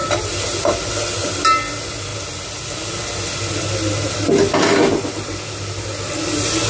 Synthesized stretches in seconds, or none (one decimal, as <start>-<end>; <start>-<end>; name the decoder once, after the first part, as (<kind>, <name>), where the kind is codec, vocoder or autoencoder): none